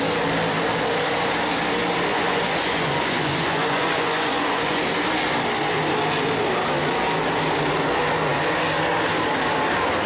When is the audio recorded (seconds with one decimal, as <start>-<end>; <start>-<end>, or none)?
0.0-2.1; 4.8-10.1